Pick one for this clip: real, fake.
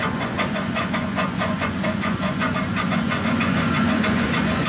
fake